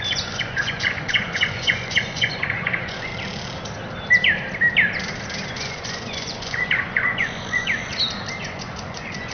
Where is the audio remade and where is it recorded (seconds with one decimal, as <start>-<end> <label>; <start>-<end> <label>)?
0.0-3.1 remade; 3.1-5.5 recorded; 5.5-7.9 remade; 7.9-8.4 recorded; 8.4-9.3 remade